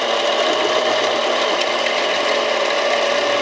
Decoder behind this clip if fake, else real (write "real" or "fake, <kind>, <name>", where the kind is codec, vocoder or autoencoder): fake, vocoder, BigVGAN v2